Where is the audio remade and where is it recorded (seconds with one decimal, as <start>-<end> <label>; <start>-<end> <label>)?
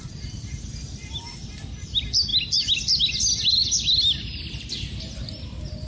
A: 0.0-5.9 recorded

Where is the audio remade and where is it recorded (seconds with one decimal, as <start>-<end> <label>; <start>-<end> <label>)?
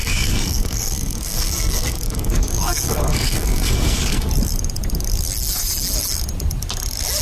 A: 0.0-4.3 remade; 4.3-7.2 recorded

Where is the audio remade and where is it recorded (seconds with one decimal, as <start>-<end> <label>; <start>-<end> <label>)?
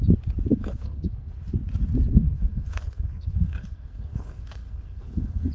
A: 0.0-0.5 recorded; 0.5-1.3 remade; 1.3-2.1 recorded; 2.1-5.5 remade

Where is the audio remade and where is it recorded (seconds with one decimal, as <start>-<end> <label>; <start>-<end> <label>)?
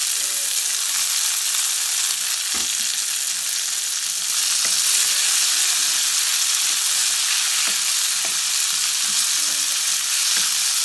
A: 0.0-10.8 recorded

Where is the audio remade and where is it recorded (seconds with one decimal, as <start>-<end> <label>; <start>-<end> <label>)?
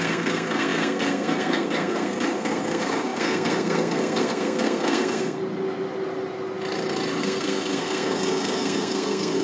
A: 0.0-5.4 remade; 5.4-7.2 recorded; 7.2-9.4 remade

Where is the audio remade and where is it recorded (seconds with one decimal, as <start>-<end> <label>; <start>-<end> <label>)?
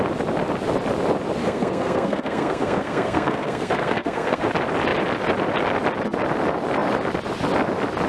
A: 0.0-1.4 recorded; 1.4-4.5 remade; 4.5-8.1 recorded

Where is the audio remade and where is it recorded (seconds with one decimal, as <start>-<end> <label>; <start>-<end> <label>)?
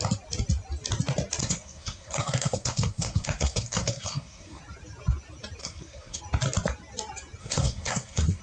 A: 0.0-1.4 recorded; 1.4-4.6 remade; 4.6-5.6 recorded; 5.6-6.2 remade; 6.2-7.4 recorded; 7.4-8.4 remade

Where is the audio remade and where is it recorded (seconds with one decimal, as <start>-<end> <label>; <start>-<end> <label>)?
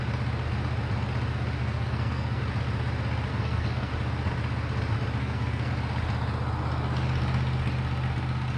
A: 0.0-1.6 recorded; 1.6-2.4 remade; 2.4-3.3 recorded; 3.3-3.9 remade; 3.9-5.2 recorded; 5.2-5.7 remade; 5.7-8.6 recorded